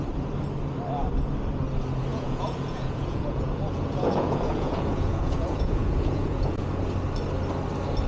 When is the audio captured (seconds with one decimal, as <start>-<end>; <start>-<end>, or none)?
0.0-2.1; 6.8-8.1